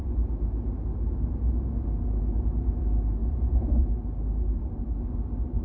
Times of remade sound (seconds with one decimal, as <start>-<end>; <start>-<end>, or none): 3.2-3.9